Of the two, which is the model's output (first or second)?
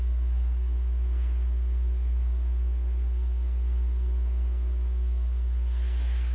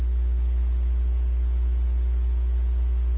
first